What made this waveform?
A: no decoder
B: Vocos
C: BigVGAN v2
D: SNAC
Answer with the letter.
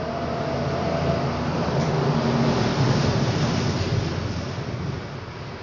A